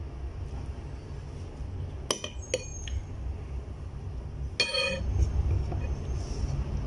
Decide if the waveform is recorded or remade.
recorded